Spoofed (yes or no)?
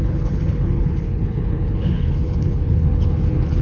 yes